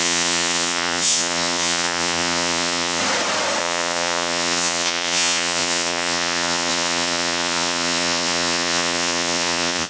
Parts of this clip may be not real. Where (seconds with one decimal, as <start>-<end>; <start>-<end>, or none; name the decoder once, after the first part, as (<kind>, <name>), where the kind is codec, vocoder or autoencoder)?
0.0-3.0 (vocoder, Vocos); 3.6-9.9